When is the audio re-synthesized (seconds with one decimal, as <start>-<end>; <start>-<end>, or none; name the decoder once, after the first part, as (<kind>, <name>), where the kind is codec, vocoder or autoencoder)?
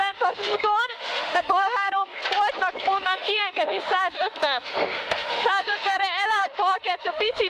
0.0-2.2 (autoencoder, DAC-VAE); 2.8-7.5